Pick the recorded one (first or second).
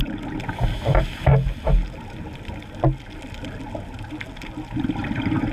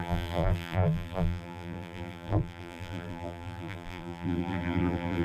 first